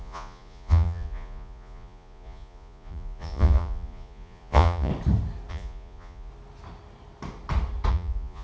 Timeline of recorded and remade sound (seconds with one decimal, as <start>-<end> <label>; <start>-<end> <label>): 0.0-4.9 remade; 4.9-5.5 recorded; 5.5-6.3 remade; 6.3-7.9 recorded; 7.9-8.4 remade